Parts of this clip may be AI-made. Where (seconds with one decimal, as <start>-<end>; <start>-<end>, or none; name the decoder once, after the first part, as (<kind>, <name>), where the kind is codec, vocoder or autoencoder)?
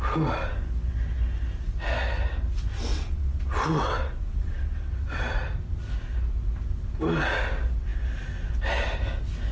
2.9-5.2 (vocoder, WaveNeXt)